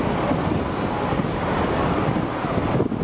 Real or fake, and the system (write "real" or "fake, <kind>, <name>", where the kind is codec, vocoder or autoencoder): real